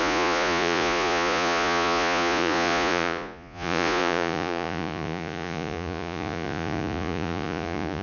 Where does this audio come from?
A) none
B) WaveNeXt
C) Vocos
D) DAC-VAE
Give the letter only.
C